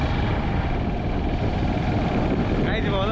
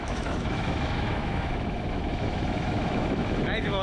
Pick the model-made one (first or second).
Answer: second